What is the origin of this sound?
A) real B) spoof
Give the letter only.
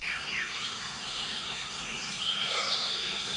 B